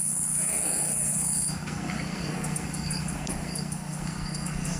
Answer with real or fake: fake